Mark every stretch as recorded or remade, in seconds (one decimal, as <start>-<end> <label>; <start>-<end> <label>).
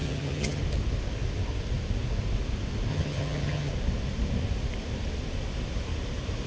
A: 0.0-0.6 remade; 0.6-2.9 recorded; 2.9-3.7 remade; 3.7-6.5 recorded